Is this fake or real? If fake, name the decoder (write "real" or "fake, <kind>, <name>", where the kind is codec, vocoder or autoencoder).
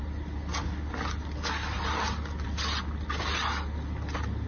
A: real